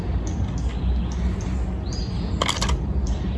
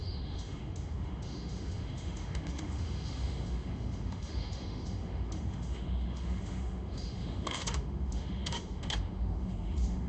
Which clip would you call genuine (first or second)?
first